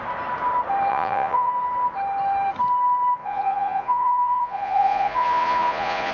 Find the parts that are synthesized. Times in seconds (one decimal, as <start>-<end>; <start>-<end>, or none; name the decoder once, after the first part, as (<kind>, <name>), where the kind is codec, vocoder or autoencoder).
0.9-1.5 (vocoder, Vocos); 3.2-6.1